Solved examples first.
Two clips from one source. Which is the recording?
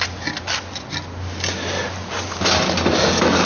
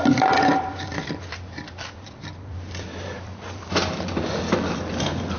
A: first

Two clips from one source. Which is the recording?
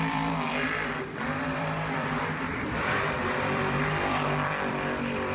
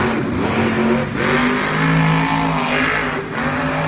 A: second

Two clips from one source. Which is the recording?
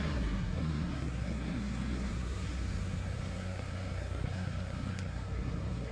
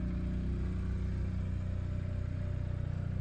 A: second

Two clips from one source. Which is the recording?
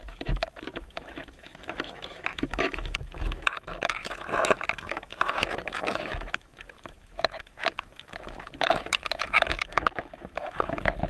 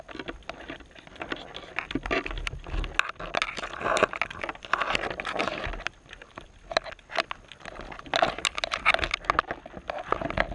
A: second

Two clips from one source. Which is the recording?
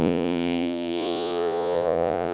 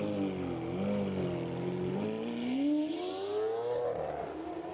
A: second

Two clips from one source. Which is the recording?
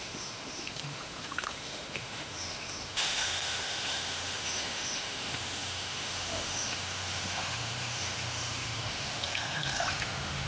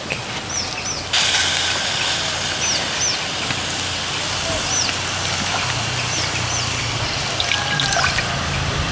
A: second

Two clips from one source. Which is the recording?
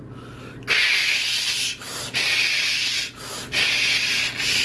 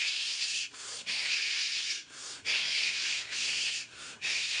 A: first